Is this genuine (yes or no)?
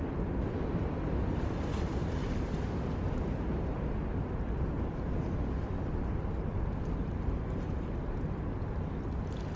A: yes